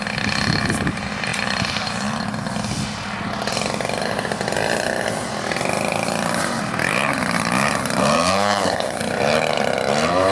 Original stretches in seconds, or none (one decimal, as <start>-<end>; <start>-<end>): 0.0-8.0; 9.0-10.3